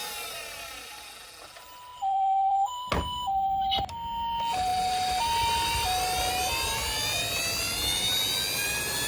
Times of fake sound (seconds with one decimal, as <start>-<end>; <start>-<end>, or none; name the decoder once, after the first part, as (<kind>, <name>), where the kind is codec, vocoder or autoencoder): 0.0-1.0 (vocoder, BigVGAN v2); 1.9-2.9

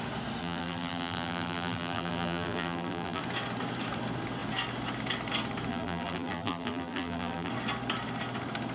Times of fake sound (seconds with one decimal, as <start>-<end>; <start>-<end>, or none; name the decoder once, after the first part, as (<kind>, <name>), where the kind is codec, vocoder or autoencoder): 0.4-3.2 (vocoder, BigVGAN v2); 5.7-7.5

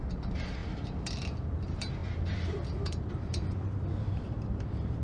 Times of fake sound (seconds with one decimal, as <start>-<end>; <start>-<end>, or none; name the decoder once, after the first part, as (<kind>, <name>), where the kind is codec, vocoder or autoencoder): 0.0-5.0 (vocoder, BigVGAN v2)

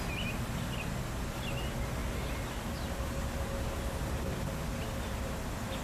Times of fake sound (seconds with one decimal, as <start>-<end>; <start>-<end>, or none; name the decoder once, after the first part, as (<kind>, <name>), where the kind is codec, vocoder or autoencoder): none

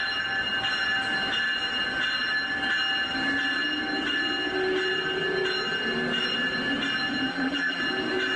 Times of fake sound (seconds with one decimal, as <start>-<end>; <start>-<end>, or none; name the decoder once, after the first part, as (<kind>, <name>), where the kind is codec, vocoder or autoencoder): 7.3-7.8 (vocoder, BigVGAN v2)

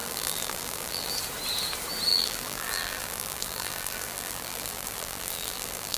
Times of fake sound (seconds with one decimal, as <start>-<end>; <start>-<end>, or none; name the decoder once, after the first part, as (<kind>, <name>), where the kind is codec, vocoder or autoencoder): 0.0-1.1 (vocoder, BigVGAN v2); 2.1-6.0